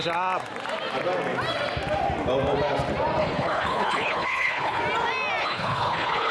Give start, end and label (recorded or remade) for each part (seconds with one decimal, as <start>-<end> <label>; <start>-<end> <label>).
0.0-3.2 recorded; 3.2-4.8 remade; 4.8-5.4 recorded; 5.4-6.3 remade